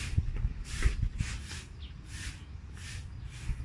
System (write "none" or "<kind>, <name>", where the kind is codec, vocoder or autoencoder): none